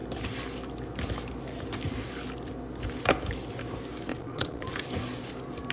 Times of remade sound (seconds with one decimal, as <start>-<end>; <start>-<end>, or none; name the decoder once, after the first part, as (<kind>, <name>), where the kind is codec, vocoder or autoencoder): 4.1-4.7 (vocoder, Vocos)